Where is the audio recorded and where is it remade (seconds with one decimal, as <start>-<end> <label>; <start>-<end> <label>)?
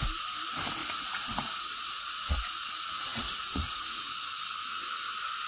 0.0-0.8 recorded; 0.8-4.1 remade; 4.1-5.5 recorded